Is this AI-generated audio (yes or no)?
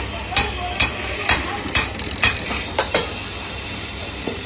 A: no